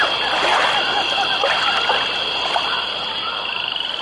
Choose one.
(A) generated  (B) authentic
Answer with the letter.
B